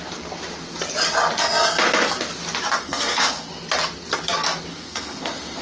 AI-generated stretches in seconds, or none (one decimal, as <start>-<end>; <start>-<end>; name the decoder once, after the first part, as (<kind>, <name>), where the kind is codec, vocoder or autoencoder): 2.8-3.5 (codec, SNAC); 4.7-5.6